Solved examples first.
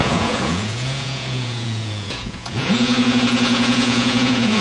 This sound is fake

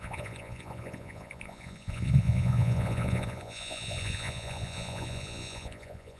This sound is fake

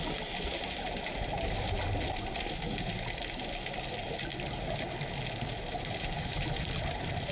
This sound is real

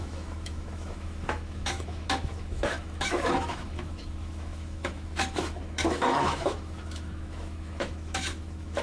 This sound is fake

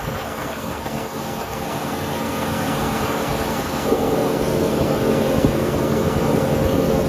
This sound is fake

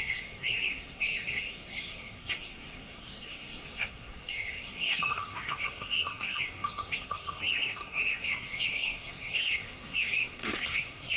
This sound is fake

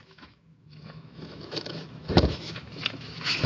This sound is fake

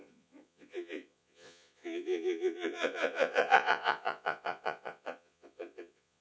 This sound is fake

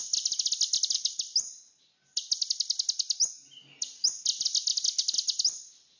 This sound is real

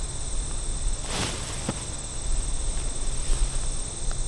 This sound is real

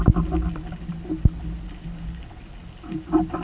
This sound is real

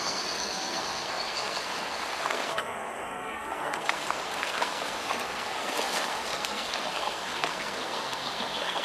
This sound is fake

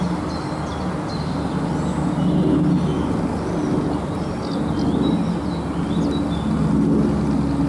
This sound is real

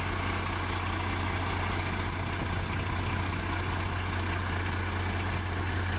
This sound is real